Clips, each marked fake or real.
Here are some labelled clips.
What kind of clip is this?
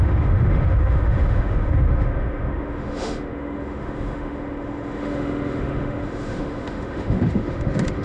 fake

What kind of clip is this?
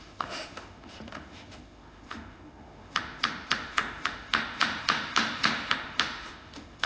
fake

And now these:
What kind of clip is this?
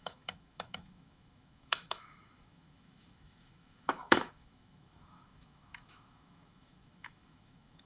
fake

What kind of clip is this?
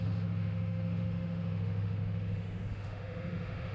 fake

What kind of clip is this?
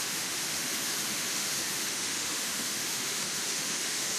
fake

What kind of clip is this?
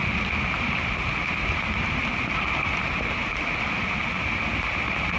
real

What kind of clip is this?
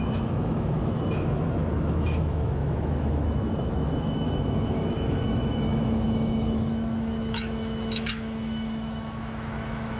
fake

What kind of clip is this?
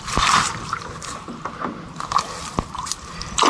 real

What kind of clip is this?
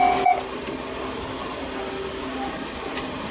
real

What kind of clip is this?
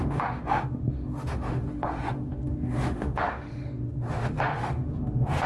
fake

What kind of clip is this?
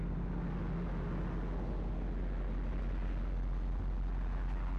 real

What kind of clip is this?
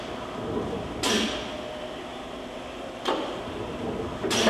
real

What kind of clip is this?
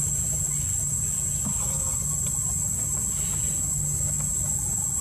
real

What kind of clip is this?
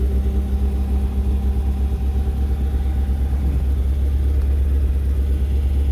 real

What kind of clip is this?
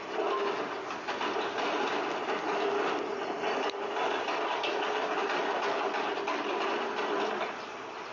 real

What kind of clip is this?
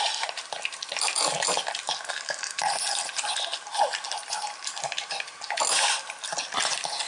real